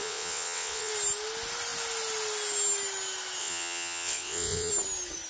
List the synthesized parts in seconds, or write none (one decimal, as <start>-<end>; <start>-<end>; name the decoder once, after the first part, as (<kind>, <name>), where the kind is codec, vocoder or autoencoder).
0.0-0.9 (vocoder, WaveNeXt); 3.4-4.7